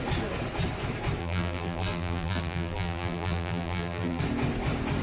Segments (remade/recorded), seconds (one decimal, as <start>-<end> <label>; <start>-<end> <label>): 0.0-1.2 recorded; 1.2-4.2 remade; 4.2-5.0 recorded